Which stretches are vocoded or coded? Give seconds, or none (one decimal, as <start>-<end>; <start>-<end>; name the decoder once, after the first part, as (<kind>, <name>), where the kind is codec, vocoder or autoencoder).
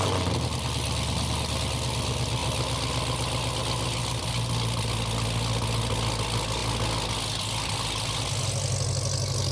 none